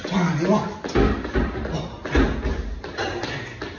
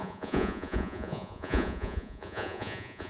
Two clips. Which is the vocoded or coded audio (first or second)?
second